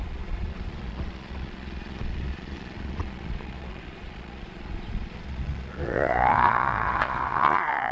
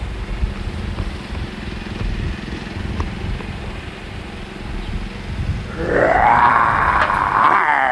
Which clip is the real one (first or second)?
second